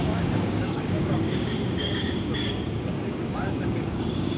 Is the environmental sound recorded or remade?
remade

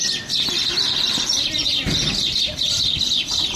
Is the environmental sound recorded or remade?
recorded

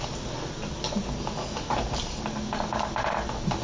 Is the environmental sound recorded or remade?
recorded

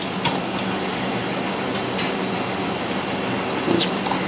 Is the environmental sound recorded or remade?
recorded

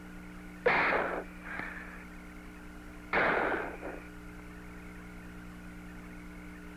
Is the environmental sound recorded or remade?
recorded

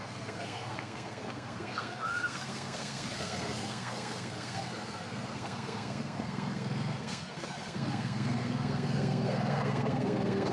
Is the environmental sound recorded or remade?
remade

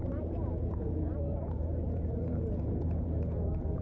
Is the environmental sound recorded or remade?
remade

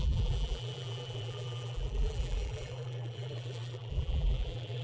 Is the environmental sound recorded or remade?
remade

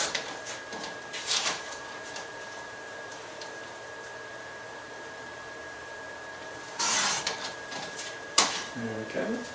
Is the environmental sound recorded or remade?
remade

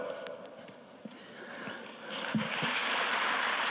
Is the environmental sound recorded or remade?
remade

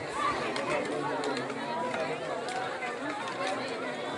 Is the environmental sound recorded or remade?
recorded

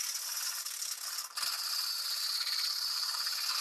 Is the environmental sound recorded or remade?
recorded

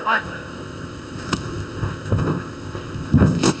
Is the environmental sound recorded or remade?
remade